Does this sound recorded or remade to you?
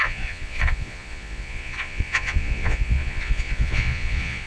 remade